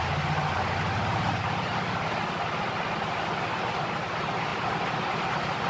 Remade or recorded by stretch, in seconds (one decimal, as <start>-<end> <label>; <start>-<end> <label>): 0.0-5.7 recorded

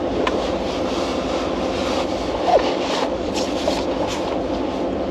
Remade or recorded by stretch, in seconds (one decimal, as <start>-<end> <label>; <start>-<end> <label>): 0.0-2.5 recorded; 2.5-3.3 remade; 3.3-5.1 recorded